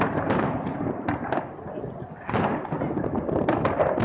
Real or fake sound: real